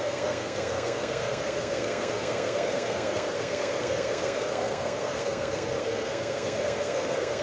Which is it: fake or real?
fake